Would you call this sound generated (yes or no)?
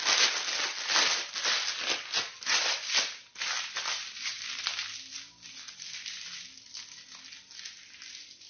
no